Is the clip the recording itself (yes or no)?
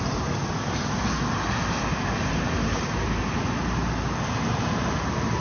yes